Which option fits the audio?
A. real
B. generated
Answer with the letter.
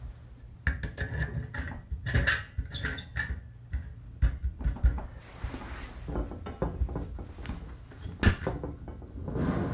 A